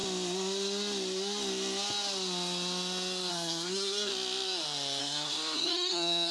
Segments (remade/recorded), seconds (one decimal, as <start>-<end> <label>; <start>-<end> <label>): 0.0-3.3 recorded; 3.3-4.1 remade; 4.1-5.0 recorded; 5.0-6.3 remade